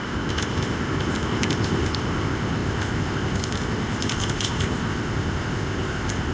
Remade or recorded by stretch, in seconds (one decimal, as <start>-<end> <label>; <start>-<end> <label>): 0.0-6.3 remade